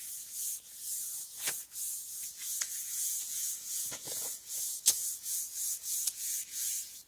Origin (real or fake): fake